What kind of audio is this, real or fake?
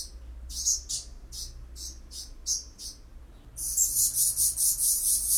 real